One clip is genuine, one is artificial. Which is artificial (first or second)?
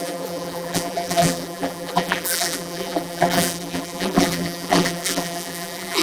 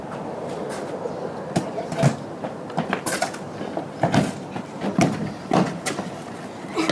first